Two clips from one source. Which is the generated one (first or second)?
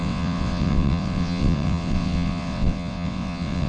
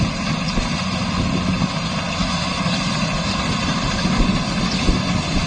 first